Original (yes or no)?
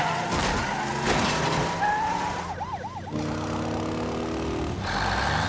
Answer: yes